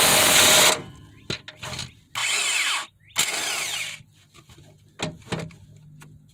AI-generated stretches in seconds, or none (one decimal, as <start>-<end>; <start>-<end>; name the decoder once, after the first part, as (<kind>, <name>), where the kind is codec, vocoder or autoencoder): 2.2-2.9 (vocoder, BigVGAN v2)